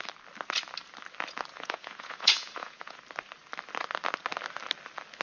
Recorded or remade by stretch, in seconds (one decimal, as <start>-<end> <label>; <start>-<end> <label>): 0.0-1.5 recorded; 1.5-3.0 remade; 3.0-5.2 recorded